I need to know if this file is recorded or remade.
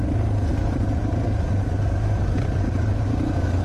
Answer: recorded